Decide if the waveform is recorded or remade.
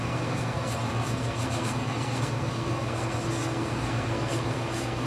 remade